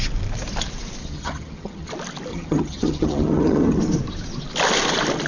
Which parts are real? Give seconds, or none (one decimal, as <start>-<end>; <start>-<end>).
0.0-1.0; 1.9-2.3; 3.8-5.3